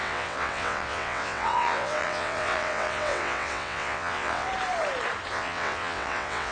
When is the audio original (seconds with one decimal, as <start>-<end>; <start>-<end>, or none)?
4.5-5.3